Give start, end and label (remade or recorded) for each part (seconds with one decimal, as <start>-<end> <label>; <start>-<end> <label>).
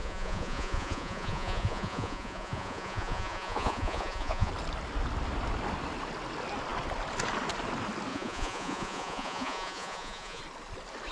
0.0-4.5 remade; 4.5-8.1 recorded; 8.1-10.4 remade; 10.4-11.1 recorded